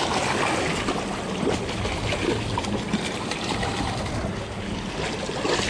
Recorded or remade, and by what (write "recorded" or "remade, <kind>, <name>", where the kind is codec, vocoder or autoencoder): recorded